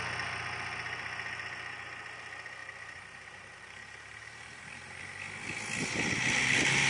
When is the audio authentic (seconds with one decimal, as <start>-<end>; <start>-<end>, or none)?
0.0-2.6; 5.0-6.9